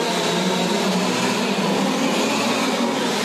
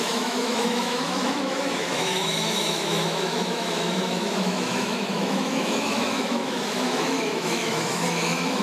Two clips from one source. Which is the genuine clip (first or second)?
first